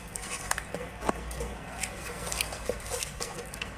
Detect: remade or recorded remade